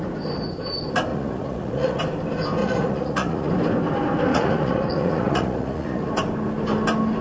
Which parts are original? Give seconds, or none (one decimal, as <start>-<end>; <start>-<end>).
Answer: 0.0-1.1; 2.0-2.6; 3.5-4.3; 6.1-7.2